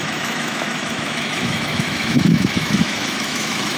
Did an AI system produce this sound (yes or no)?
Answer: yes